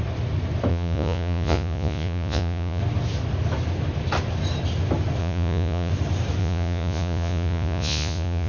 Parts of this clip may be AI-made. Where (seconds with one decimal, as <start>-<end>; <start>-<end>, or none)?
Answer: 0.7-2.8; 5.2-5.9; 6.4-8.5